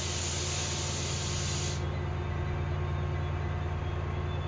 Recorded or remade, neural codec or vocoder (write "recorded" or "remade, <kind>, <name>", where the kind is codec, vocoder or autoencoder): recorded